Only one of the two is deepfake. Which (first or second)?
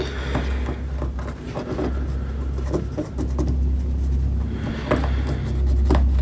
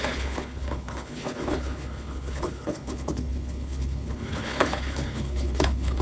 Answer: second